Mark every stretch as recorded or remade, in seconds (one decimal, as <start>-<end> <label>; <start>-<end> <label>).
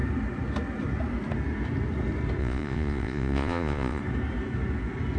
0.0-2.4 recorded; 2.4-4.0 remade; 4.0-5.2 recorded